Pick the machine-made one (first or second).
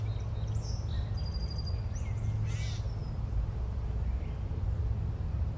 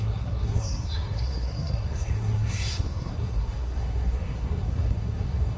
second